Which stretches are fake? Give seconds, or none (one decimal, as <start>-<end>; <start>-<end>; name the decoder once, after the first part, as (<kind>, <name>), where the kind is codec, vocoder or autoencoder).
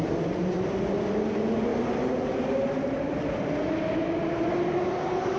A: none